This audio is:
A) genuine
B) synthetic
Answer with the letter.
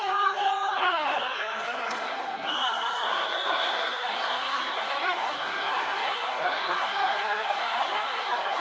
B